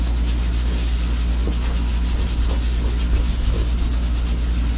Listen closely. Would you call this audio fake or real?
real